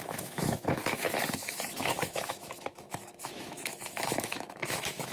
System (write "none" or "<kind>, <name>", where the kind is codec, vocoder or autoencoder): autoencoder, DAC-VAE